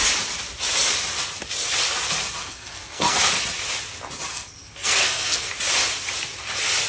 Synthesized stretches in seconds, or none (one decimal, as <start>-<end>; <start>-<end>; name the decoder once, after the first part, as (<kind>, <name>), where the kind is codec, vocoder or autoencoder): 2.4-3.3 (codec, SNAC); 4.3-5.5

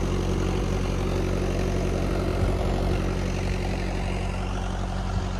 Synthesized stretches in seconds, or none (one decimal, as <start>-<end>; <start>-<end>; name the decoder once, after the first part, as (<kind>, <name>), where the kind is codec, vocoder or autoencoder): none

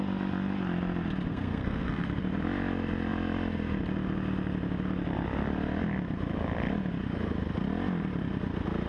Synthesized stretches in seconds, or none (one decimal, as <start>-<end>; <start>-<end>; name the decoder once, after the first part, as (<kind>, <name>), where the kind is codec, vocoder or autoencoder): 1.3-2.2 (codec, SNAC)

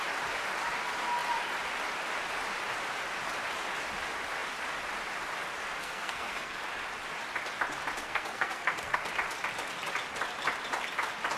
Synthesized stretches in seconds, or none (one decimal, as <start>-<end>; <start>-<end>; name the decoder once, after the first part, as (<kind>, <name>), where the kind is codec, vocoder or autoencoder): 5.8-6.6 (codec, SNAC); 8.0-9.1

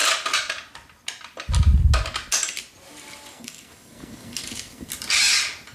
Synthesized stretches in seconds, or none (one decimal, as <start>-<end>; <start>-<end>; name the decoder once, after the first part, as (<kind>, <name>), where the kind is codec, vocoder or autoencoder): 3.3-4.9 (codec, SNAC)